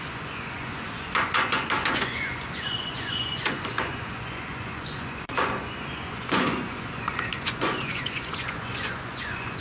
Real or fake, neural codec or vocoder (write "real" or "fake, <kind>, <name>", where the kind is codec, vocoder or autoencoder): fake, vocoder, Vocos